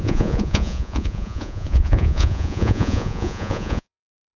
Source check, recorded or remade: remade